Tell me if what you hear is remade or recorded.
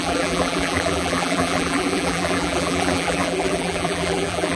remade